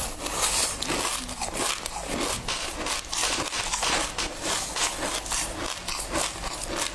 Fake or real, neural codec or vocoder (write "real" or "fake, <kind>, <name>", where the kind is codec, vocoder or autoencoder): real